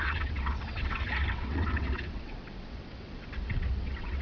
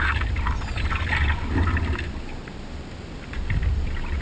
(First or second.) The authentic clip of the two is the second